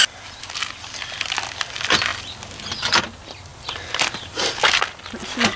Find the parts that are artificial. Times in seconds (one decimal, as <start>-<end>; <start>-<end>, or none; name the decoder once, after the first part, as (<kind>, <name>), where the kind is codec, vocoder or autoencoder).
none